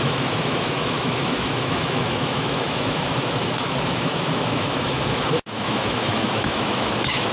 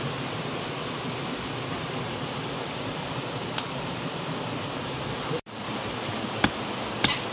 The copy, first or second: first